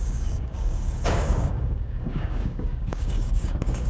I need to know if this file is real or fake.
fake